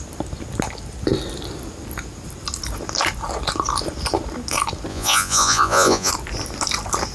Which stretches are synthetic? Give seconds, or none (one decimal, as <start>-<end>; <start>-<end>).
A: 4.9-6.1